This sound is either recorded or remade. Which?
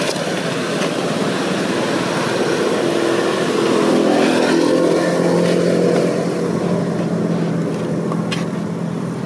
recorded